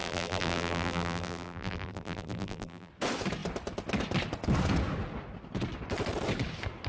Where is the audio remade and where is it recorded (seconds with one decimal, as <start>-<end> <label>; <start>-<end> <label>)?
0.0-2.9 remade; 2.9-6.9 recorded